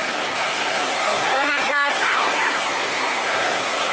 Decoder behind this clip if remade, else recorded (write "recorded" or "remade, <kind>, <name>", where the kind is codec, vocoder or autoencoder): remade, codec, SNAC